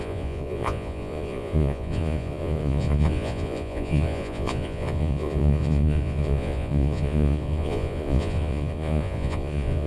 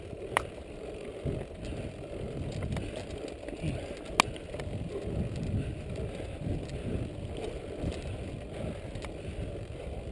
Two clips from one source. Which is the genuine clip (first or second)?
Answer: second